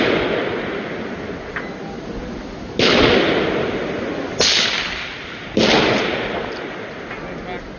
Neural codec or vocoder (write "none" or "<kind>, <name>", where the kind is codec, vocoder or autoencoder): none